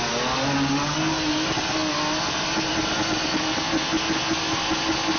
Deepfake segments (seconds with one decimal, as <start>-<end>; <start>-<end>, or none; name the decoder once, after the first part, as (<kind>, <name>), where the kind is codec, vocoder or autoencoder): none